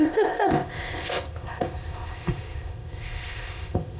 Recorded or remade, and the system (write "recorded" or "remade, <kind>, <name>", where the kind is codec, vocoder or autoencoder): remade, codec, ZipCodec